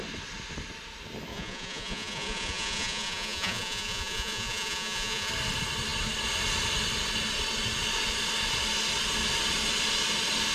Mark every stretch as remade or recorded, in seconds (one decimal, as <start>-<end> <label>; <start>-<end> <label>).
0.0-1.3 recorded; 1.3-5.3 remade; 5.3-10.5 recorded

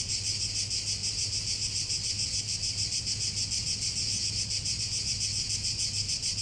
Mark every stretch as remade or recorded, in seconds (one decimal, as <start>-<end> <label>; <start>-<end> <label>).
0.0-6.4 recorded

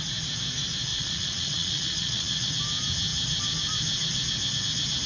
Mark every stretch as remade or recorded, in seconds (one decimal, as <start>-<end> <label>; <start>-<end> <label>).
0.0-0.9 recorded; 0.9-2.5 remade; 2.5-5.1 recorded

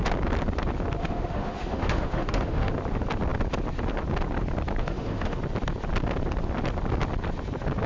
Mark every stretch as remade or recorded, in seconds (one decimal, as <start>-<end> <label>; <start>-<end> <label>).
0.0-1.0 recorded; 1.0-2.7 remade; 2.7-4.8 recorded; 4.8-5.4 remade; 5.4-7.9 recorded

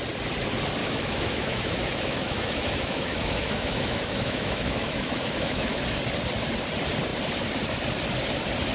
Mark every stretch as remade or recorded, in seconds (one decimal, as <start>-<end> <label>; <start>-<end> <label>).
0.0-0.8 recorded; 0.8-5.8 remade; 5.8-8.7 recorded

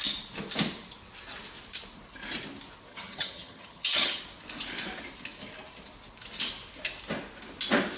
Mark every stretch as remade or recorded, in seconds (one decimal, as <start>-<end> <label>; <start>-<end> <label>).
0.0-2.9 recorded; 2.9-4.2 remade; 4.2-8.0 recorded

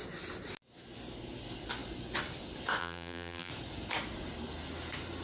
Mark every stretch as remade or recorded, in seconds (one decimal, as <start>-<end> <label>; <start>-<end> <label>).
0.0-2.8 recorded; 2.8-3.5 remade; 3.5-5.2 recorded